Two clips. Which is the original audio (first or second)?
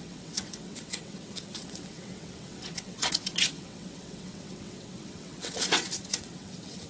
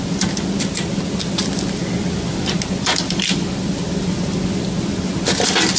second